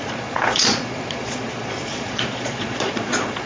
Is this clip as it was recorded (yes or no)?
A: no